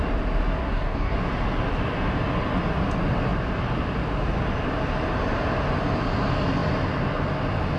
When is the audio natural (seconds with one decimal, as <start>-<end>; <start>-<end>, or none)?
0.0-0.6; 1.2-7.8